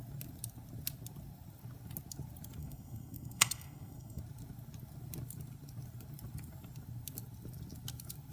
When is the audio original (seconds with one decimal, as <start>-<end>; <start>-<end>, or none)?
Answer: 0.0-2.6; 4.2-8.3